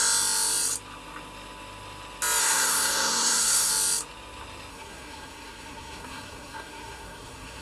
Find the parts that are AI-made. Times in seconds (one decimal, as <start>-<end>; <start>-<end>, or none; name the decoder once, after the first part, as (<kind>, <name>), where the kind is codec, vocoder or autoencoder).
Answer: 2.4-3.7 (codec, SNAC); 4.7-7.6